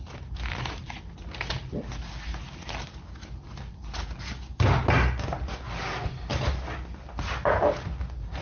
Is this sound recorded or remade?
recorded